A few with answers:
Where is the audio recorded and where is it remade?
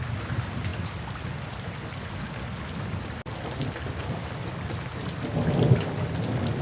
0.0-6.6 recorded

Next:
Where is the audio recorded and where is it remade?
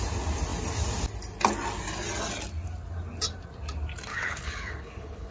0.0-4.1 recorded; 4.1-5.3 remade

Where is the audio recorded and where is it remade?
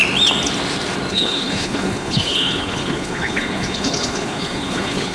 0.0-1.1 recorded; 1.1-5.1 remade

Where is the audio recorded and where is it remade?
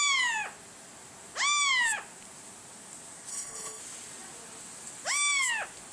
0.0-3.3 recorded; 3.3-3.8 remade; 3.8-5.9 recorded